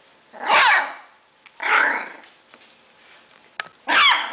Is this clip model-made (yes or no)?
no